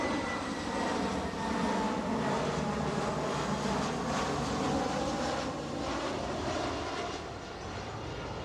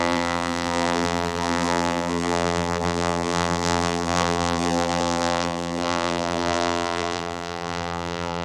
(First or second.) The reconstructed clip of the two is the second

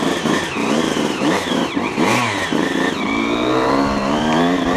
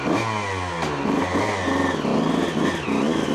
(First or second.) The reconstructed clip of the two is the first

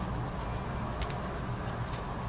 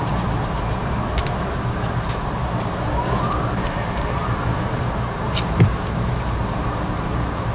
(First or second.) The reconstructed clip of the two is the second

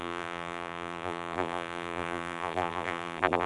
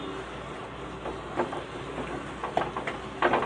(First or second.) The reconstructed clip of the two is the first